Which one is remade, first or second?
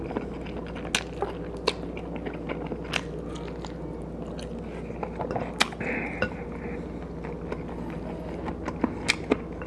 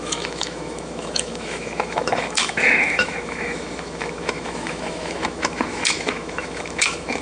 second